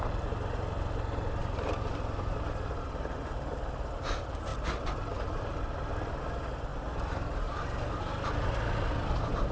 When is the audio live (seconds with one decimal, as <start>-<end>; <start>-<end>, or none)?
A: 0.0-9.5